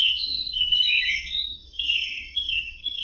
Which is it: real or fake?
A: fake